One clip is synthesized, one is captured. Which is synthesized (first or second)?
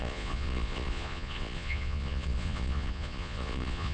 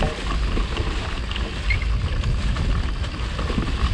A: first